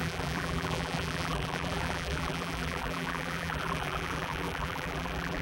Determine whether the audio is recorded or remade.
remade